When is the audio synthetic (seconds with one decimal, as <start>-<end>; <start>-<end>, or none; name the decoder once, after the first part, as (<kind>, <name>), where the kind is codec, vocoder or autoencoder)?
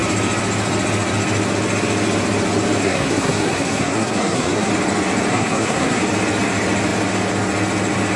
2.8-4.7 (codec, SNAC); 5.3-6.0